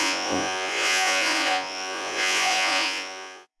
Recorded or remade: remade